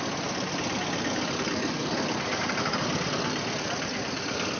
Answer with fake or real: real